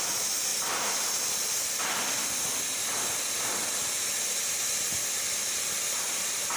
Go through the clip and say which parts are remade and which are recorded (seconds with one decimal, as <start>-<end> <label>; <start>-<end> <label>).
0.0-3.6 remade; 3.6-4.2 recorded; 4.2-6.6 remade